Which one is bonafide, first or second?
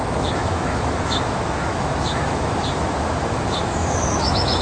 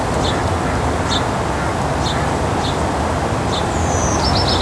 second